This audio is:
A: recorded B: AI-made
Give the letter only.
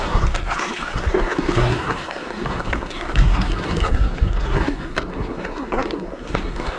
B